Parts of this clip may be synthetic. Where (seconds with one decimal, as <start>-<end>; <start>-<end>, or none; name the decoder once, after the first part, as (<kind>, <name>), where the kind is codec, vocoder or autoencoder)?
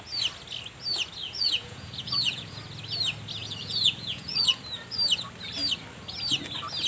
1.2-2.6 (vocoder, Vocos); 3.4-4.6